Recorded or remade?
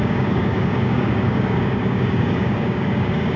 remade